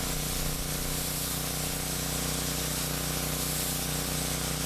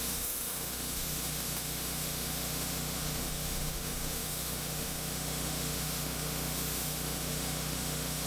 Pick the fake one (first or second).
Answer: second